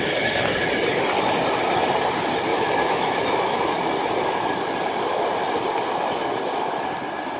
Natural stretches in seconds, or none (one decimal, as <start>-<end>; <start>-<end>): 0.0-2.5; 3.8-7.4